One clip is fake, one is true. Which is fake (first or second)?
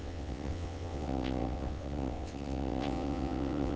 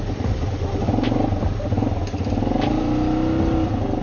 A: first